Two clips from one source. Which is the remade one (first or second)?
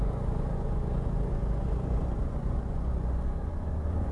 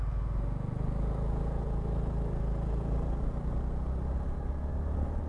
first